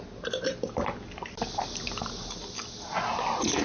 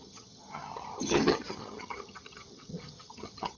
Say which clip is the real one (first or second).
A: first